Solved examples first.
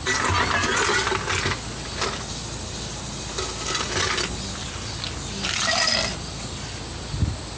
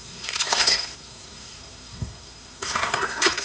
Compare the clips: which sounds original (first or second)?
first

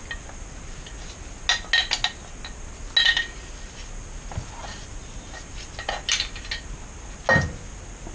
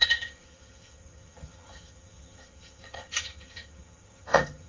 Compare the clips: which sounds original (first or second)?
first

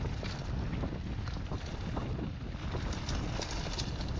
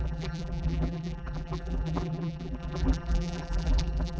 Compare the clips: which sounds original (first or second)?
first